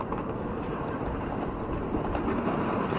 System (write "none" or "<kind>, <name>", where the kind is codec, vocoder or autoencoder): none